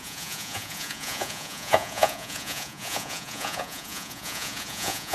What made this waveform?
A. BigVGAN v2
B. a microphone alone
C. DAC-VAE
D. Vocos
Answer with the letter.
D